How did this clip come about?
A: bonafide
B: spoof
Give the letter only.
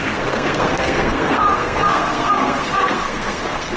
B